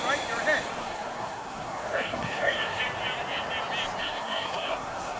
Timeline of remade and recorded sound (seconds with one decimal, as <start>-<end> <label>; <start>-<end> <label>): 0.0-0.8 recorded; 0.8-2.8 remade; 2.8-4.0 recorded; 4.0-5.2 remade

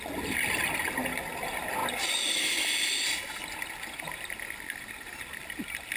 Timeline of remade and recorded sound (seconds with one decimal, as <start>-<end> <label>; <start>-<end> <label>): 0.0-6.0 recorded